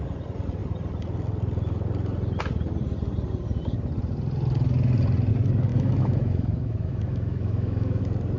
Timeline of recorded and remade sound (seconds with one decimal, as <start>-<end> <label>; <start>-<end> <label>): 0.0-5.7 recorded; 5.7-8.0 remade; 8.0-8.4 recorded